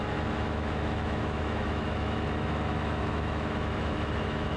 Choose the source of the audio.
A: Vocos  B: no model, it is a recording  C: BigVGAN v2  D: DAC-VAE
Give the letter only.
D